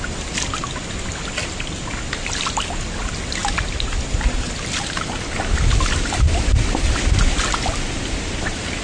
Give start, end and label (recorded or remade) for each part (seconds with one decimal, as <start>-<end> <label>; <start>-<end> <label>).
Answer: 0.0-8.8 recorded